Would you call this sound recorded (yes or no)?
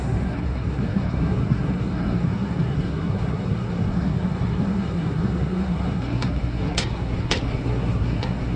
no